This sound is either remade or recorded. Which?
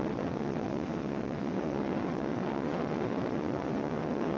remade